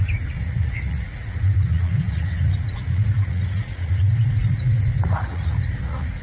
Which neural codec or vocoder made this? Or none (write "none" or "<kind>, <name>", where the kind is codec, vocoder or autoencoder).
vocoder, Vocos